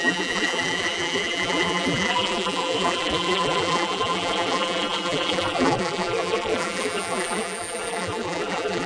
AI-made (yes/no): yes